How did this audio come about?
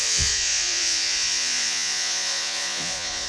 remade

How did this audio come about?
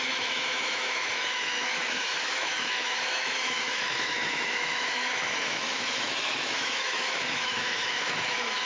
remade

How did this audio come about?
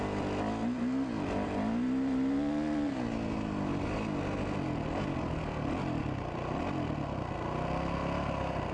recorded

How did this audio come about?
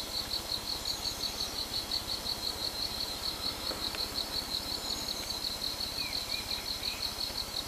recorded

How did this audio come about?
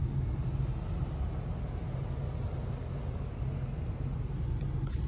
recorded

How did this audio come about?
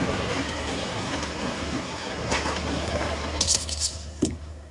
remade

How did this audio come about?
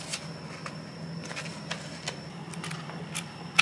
recorded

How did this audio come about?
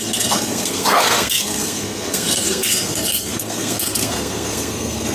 remade